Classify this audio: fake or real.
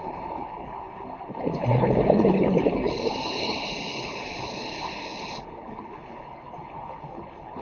fake